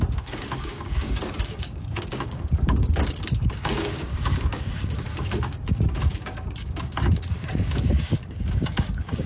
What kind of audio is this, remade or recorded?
remade